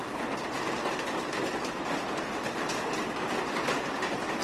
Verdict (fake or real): real